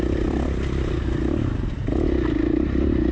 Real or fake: real